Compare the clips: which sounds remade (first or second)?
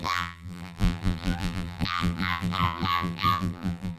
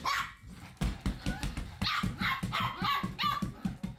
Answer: first